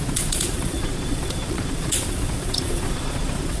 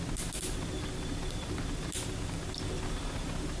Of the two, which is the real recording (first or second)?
second